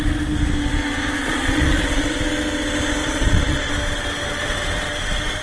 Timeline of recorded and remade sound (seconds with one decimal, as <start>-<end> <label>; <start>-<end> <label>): 0.0-1.2 recorded; 1.2-2.2 remade; 2.2-3.0 recorded; 3.0-3.7 remade; 3.7-5.4 recorded